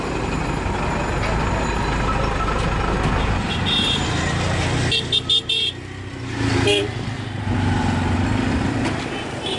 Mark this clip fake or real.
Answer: real